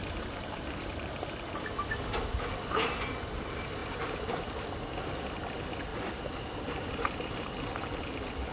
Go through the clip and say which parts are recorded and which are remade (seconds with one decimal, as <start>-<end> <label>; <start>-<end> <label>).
0.0-0.9 remade; 0.9-3.8 recorded; 3.8-4.4 remade; 4.4-5.9 recorded; 5.9-7.4 remade; 7.4-8.5 recorded